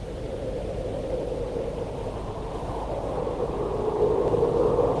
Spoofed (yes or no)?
no